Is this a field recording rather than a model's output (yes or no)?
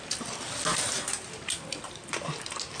yes